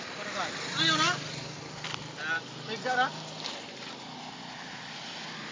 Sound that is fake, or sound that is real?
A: real